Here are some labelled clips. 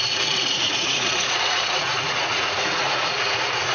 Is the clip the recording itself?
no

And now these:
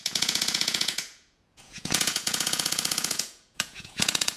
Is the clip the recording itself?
no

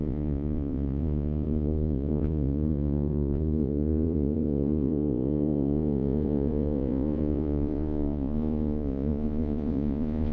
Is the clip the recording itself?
no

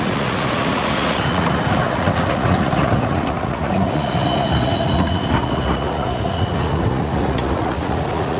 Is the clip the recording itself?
no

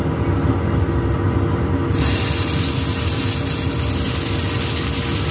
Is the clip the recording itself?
yes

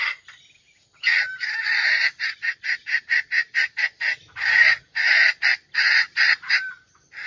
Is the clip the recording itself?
yes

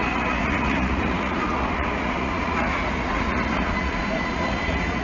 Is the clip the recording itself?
no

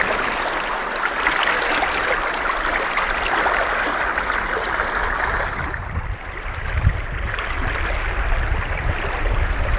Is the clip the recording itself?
yes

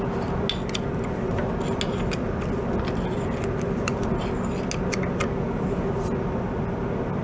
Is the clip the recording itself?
yes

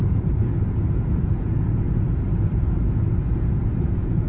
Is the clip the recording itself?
no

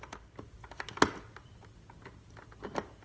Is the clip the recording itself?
yes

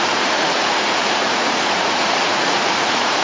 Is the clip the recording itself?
no